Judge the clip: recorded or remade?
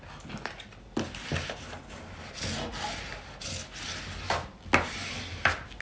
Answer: recorded